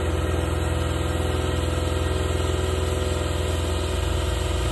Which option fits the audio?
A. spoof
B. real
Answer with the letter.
B